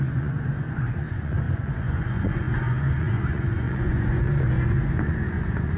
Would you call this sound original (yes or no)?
no